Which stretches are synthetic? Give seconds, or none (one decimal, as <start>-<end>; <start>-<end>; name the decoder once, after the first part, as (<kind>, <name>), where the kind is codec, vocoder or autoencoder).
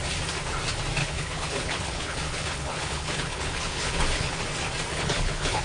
1.0-4.4 (codec, HILCodec); 4.9-5.6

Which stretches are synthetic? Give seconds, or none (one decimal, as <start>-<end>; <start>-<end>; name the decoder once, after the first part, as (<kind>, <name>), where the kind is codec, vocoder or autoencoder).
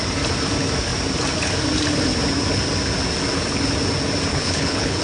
4.3-5.0 (codec, HILCodec)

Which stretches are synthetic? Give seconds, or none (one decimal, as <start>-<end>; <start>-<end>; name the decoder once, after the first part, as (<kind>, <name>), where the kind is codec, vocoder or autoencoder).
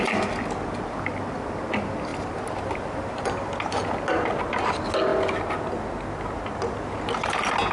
none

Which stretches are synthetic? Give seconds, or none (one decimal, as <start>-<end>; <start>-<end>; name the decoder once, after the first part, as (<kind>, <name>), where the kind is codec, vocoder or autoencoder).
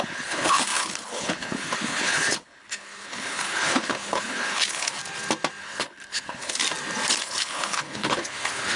0.0-5.0 (codec, HILCodec); 5.6-6.6; 7.1-8.8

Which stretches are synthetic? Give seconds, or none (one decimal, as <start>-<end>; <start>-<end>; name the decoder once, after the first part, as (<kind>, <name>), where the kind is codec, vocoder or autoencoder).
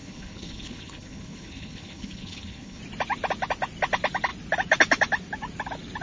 0.0-2.8 (codec, HILCodec)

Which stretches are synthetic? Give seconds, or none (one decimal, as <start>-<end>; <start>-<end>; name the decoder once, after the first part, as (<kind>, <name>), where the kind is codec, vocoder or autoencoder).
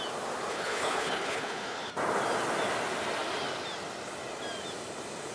0.5-1.9 (codec, HILCodec)